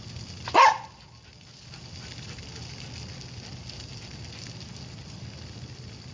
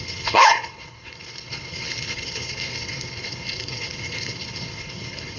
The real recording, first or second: first